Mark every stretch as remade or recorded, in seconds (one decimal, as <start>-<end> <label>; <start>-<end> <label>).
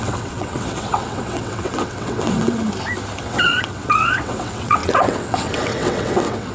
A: 0.0-2.6 remade; 2.6-3.2 recorded; 3.2-6.5 remade